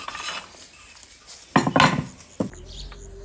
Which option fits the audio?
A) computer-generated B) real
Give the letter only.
B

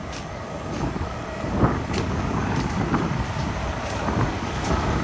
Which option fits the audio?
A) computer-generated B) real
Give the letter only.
A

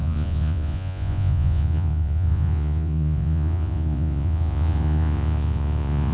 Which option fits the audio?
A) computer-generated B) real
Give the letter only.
A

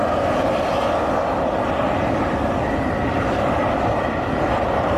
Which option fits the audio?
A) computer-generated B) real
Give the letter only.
B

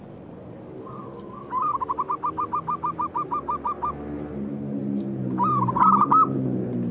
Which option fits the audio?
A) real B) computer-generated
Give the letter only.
A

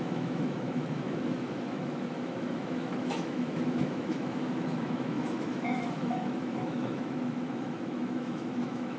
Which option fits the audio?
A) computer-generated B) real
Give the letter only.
A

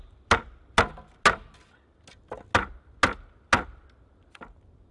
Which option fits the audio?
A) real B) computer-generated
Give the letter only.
A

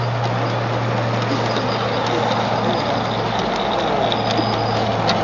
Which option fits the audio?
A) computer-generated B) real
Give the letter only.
B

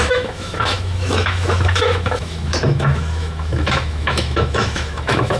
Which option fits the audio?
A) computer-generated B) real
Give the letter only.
A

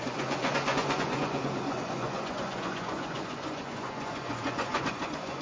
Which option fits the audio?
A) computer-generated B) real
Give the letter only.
A